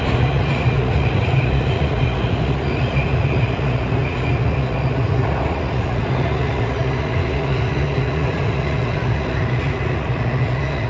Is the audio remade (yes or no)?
yes